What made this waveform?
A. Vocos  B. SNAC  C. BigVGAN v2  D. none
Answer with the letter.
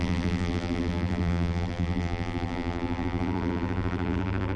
C